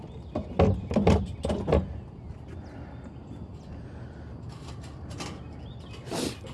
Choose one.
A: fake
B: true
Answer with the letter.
B